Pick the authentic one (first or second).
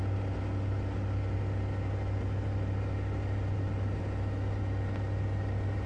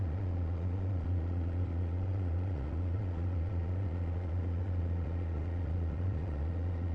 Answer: first